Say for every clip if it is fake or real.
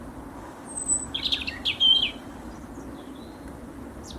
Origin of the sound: real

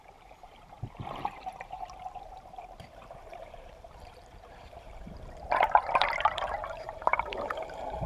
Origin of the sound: fake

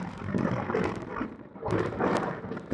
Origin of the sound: fake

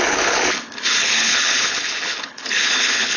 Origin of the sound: fake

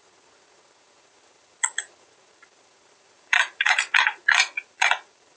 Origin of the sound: fake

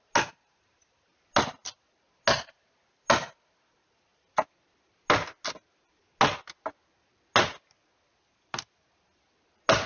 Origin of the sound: real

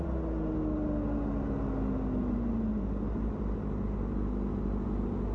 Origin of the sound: real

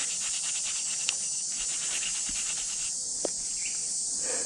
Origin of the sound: real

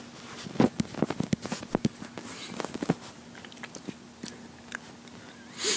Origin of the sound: real